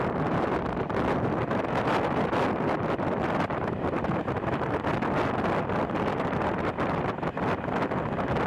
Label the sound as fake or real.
real